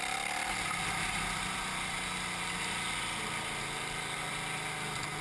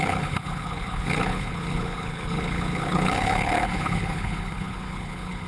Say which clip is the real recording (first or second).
first